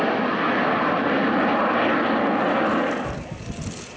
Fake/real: real